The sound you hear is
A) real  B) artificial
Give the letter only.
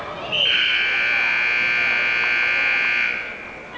A